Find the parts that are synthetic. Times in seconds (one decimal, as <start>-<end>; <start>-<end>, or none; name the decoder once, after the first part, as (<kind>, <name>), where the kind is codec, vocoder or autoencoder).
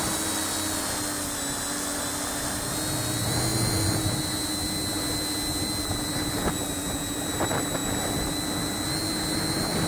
none